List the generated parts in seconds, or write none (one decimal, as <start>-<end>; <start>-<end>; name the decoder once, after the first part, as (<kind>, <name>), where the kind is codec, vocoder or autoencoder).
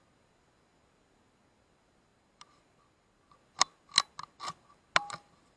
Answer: none